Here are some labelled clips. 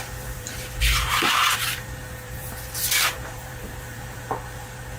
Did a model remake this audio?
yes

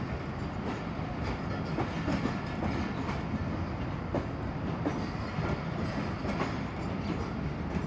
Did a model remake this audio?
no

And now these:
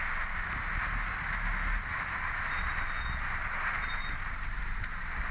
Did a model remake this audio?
no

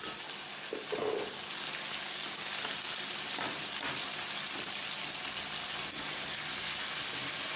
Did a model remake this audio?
no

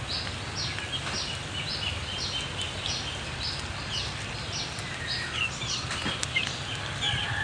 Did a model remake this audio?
no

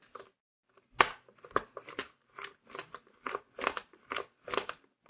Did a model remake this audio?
no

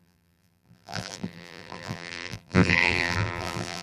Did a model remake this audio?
yes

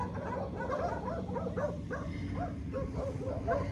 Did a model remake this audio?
no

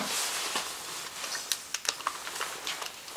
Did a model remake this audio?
no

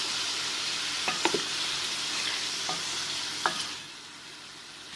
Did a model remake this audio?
yes